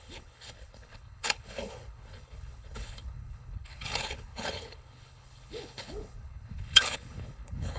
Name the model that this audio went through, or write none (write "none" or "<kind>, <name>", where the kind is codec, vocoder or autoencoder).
codec, HILCodec